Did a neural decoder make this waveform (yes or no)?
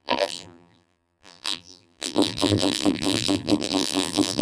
yes